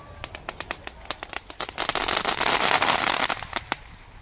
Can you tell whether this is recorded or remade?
recorded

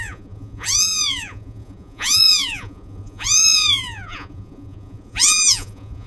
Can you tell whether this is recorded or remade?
remade